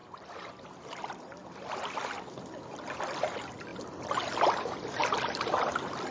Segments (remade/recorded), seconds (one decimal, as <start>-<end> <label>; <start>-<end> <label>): 0.0-6.1 recorded